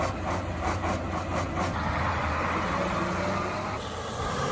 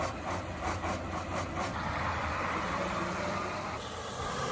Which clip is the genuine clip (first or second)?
first